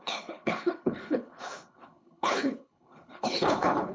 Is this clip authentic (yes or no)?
no